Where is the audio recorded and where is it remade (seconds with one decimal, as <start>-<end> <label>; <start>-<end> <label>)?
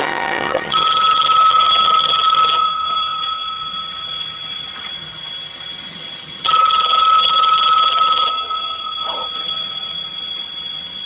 0.0-11.1 remade